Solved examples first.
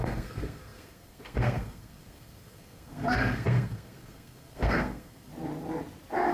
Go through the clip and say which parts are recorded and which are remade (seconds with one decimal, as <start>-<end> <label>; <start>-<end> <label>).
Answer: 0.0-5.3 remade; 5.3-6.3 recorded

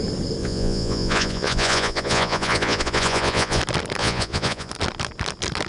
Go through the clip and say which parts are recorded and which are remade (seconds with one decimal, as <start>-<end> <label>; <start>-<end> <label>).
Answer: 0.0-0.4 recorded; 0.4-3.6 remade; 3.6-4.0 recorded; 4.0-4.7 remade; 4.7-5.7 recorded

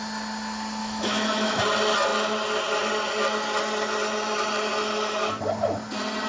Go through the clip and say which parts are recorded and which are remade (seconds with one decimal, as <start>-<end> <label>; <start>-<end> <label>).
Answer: 0.0-0.8 recorded; 0.8-1.6 remade; 1.6-6.3 recorded